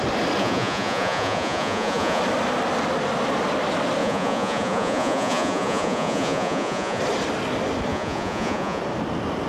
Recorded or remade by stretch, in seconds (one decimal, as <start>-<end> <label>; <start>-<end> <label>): 0.0-0.4 recorded; 0.4-2.2 remade; 2.2-4.0 recorded; 4.0-7.0 remade; 7.0-7.9 recorded; 7.9-8.8 remade; 8.8-9.5 recorded